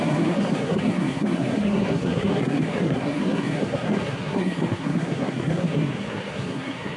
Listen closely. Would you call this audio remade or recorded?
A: remade